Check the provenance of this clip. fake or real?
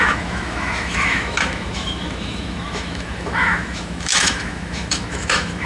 fake